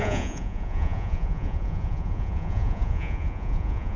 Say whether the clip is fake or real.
fake